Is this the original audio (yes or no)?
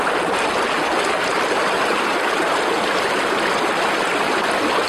yes